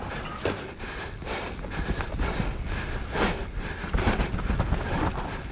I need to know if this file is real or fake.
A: real